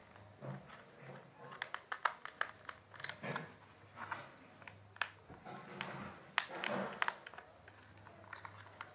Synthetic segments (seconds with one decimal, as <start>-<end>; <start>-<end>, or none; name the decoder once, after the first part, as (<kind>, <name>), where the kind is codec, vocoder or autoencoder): none